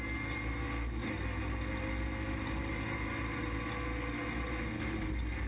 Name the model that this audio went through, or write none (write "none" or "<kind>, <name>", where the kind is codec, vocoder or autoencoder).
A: none